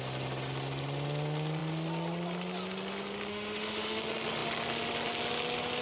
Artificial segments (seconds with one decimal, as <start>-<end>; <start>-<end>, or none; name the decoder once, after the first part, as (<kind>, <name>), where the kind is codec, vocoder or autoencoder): 3.3-4.0 (autoencoder, DAC-VAE)